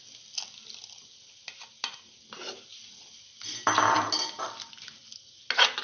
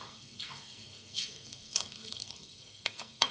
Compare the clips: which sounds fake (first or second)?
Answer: second